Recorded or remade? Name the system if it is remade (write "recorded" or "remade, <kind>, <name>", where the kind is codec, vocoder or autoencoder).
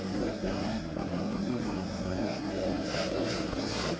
remade, codec, SNAC